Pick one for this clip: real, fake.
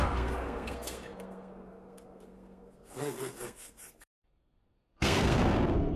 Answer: fake